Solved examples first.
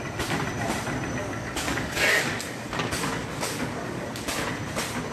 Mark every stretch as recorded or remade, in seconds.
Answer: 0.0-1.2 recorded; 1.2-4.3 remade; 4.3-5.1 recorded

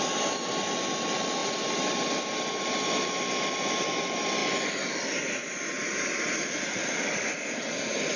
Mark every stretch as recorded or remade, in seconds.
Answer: 0.0-8.2 recorded

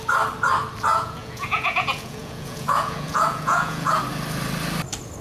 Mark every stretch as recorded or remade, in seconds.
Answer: 0.0-0.9 recorded; 0.9-4.0 remade; 4.0-5.2 recorded

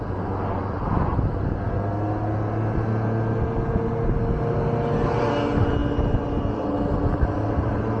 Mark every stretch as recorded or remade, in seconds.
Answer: 0.0-8.0 recorded

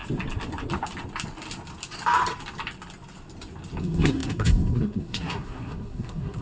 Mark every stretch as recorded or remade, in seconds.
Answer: 0.0-3.8 recorded; 3.8-6.4 remade

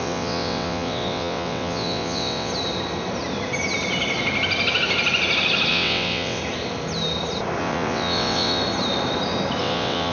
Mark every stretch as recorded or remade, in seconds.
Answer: 0.0-2.5 remade; 2.5-5.7 recorded; 5.7-6.4 remade; 6.4-7.6 recorded; 7.6-8.6 remade; 8.6-9.6 recorded; 9.6-10.1 remade